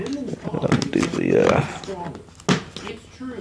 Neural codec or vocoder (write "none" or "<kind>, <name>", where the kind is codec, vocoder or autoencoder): none